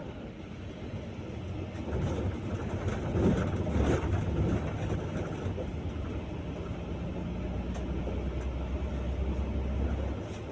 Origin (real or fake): real